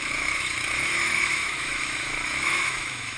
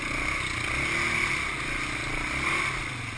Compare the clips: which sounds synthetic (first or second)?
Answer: first